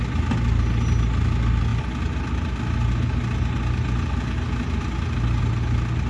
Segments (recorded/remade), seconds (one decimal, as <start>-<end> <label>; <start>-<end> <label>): 0.0-6.1 recorded